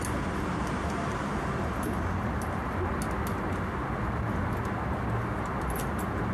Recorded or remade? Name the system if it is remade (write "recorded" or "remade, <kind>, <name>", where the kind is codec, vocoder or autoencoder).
recorded